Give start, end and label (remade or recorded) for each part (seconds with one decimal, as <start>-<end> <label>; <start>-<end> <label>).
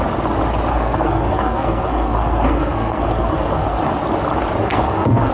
0.0-0.7 recorded; 0.7-3.9 remade; 3.9-4.6 recorded; 4.6-5.3 remade